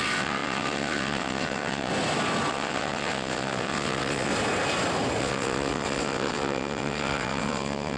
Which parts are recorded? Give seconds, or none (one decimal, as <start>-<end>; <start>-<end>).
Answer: 1.9-2.5; 4.3-5.2